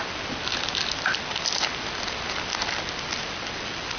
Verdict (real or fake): real